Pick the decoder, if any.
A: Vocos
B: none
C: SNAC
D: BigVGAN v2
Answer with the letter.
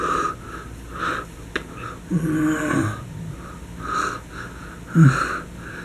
B